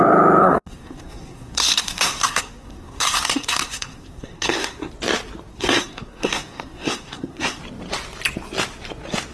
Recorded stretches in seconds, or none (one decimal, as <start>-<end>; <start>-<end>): 0.0-0.4; 4.9-5.5; 7.6-9.3